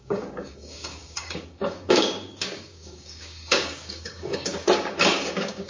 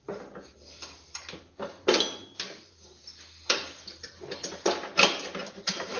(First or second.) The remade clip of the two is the first